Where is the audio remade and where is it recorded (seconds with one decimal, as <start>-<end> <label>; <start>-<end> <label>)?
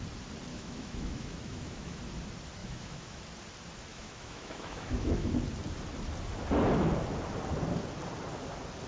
0.0-0.5 recorded; 0.5-2.0 remade; 2.0-2.6 recorded; 2.6-3.2 remade; 3.2-3.9 recorded; 3.9-5.3 remade; 5.3-8.9 recorded